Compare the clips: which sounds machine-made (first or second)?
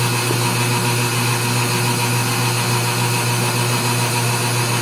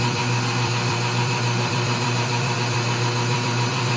second